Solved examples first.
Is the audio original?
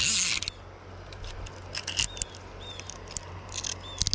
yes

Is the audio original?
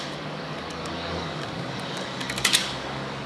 no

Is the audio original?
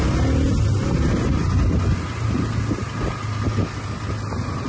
yes